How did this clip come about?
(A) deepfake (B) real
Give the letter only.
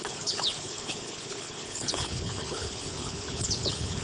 A